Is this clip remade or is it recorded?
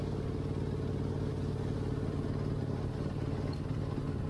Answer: recorded